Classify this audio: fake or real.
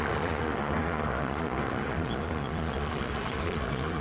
fake